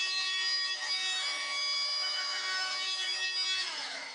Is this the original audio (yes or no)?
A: no